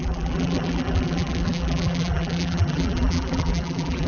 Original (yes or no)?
no